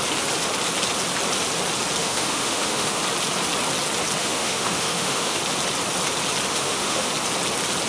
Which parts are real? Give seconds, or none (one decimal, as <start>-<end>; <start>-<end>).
0.0-2.0; 3.0-4.2; 5.4-6.5; 7.1-7.9